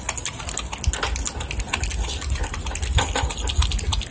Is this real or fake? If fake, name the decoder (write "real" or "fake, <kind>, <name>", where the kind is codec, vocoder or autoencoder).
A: real